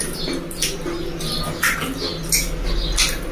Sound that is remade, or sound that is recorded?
recorded